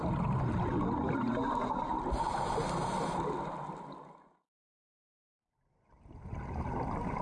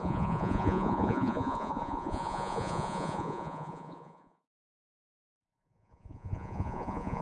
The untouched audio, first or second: first